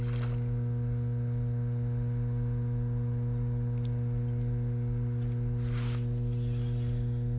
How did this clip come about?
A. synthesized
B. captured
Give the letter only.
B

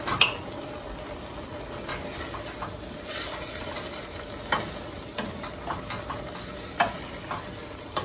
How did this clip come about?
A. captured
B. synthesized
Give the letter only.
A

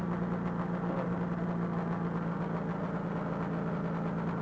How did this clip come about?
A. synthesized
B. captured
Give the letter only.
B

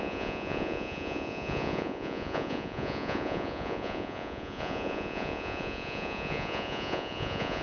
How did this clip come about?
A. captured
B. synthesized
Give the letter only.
B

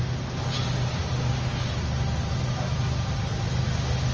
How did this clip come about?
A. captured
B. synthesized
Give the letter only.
A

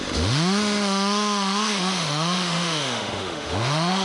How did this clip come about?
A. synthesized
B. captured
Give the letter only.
A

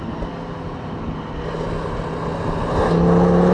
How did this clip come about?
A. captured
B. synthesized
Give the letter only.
A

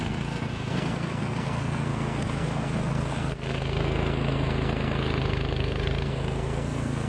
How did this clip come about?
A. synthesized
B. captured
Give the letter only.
A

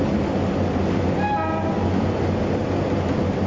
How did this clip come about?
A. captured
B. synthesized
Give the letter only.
A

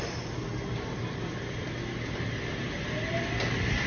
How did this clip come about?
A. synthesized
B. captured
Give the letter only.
B